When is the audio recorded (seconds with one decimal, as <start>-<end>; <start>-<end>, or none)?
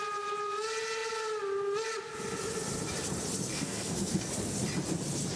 0.0-3.5; 4.3-5.4